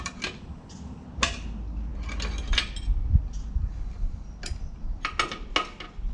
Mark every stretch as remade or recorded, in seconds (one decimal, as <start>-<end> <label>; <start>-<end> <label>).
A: 0.0-6.1 recorded